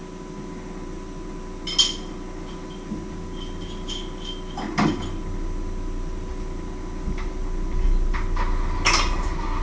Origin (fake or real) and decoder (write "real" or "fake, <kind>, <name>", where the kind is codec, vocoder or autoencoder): real